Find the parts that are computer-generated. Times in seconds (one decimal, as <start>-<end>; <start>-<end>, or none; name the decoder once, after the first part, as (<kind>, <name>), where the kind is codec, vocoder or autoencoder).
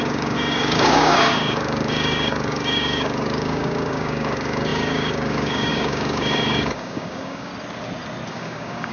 0.0-7.5 (codec, DAC); 8.3-8.9